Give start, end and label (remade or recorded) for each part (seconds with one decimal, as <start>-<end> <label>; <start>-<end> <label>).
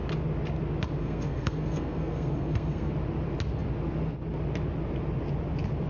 0.0-1.0 recorded; 1.0-2.9 remade; 2.9-5.9 recorded